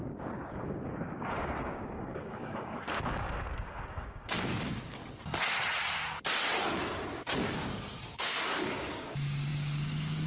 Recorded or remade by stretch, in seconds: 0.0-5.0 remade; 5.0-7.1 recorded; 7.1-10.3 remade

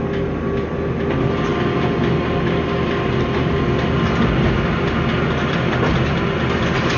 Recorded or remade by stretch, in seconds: 0.0-7.0 recorded

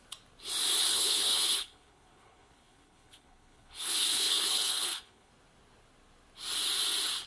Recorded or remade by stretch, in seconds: 0.0-0.9 recorded; 0.9-5.3 remade; 5.3-7.3 recorded

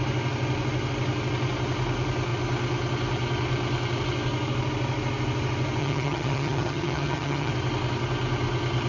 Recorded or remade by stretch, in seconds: 0.0-5.8 recorded; 5.8-7.5 remade; 7.5-8.9 recorded

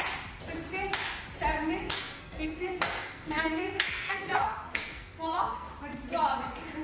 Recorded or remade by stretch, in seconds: 0.0-1.8 recorded; 1.8-5.7 remade; 5.7-6.8 recorded

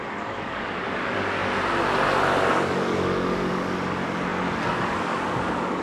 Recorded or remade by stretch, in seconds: 0.0-1.4 remade; 1.4-2.5 recorded; 2.5-5.8 remade

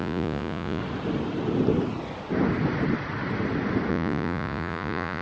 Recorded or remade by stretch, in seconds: 0.0-0.8 remade; 0.8-3.9 recorded; 3.9-5.2 remade

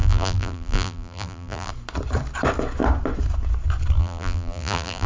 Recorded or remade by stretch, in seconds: 0.0-1.7 remade; 1.7-4.0 recorded; 4.0-5.1 remade